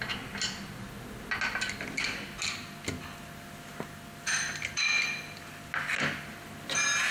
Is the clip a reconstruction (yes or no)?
no